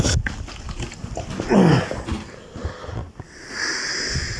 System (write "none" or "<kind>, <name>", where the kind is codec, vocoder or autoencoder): none